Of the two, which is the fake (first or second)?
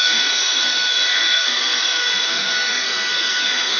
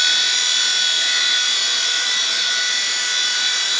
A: first